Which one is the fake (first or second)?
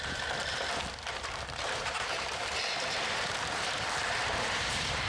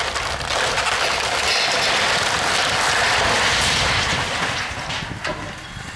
first